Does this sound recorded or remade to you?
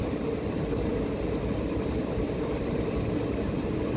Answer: recorded